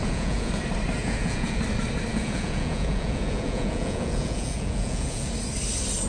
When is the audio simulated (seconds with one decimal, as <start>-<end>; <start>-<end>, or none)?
0.0-0.5; 1.0-1.6; 2.1-5.3